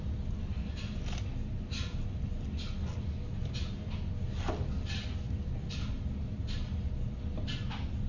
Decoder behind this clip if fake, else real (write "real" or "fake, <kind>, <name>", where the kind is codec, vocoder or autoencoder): real